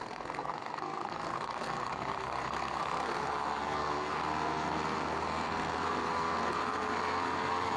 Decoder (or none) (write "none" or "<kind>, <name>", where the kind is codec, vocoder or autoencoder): codec, SNAC